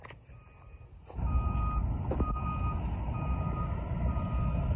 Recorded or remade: recorded